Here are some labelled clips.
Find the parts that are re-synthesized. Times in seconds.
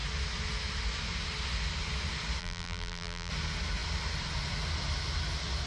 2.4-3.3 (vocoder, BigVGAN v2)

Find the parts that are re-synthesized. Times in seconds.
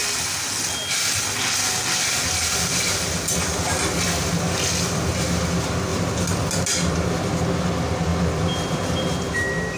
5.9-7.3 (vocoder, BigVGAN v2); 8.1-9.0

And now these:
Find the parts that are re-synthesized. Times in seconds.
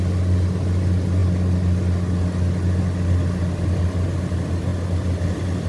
none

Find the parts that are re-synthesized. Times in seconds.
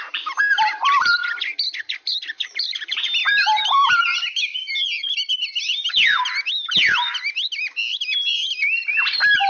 0.0-1.2 (vocoder, BigVGAN v2); 1.8-4.7; 7.9-9.5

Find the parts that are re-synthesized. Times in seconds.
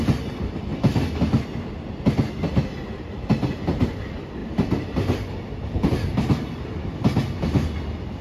none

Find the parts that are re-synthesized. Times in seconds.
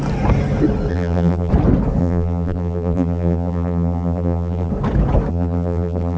0.9-1.5 (vocoder, BigVGAN v2); 2.0-4.7; 5.3-6.2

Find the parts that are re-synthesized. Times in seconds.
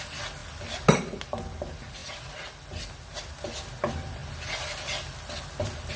none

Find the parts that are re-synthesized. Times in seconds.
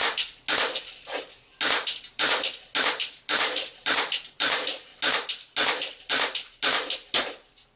2.8-4.9 (vocoder, BigVGAN v2); 7.2-7.8